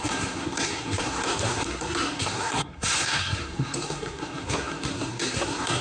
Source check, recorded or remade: remade